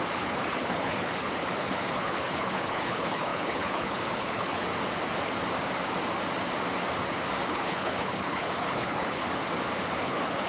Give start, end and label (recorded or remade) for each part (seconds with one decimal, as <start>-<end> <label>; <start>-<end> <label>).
0.0-4.7 remade; 4.7-7.5 recorded; 7.5-9.2 remade; 9.2-10.0 recorded; 10.0-10.5 remade

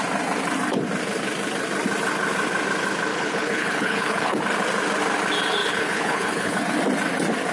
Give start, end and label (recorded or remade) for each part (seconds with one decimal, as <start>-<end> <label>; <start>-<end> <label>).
0.0-3.1 recorded; 3.1-4.4 remade; 4.4-5.6 recorded; 5.6-6.6 remade; 6.6-7.5 recorded

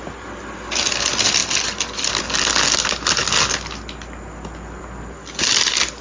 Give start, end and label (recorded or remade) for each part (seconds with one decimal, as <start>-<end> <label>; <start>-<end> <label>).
0.0-6.0 recorded

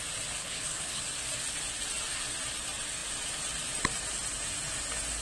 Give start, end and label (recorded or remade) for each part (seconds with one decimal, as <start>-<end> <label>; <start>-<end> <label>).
0.0-0.4 recorded; 0.4-1.0 remade; 1.0-5.2 recorded

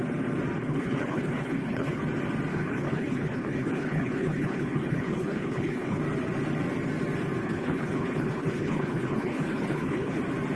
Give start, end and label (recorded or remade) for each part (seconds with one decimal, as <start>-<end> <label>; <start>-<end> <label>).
0.0-0.6 recorded; 0.6-2.0 remade; 2.0-2.5 recorded; 2.5-6.0 remade; 6.0-7.4 recorded; 7.4-10.2 remade; 10.2-10.6 recorded

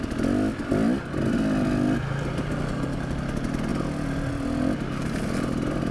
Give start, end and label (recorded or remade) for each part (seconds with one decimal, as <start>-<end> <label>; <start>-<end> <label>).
0.0-5.9 recorded

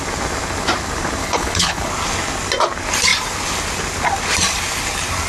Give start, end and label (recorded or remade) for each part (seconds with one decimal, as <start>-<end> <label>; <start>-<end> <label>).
0.0-1.2 recorded; 1.2-1.9 remade; 1.9-5.3 recorded